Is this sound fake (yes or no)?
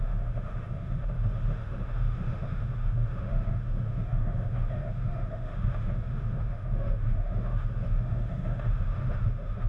yes